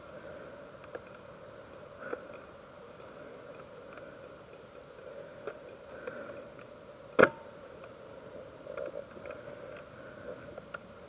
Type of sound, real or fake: real